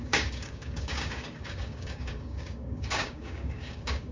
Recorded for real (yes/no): no